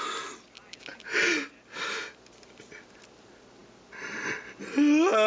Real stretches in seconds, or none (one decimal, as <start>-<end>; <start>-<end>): 0.0-5.3